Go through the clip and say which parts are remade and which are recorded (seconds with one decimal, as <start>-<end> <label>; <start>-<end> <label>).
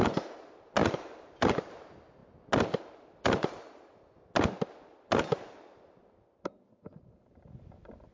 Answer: 0.0-0.8 recorded; 0.8-1.6 remade; 1.6-8.1 recorded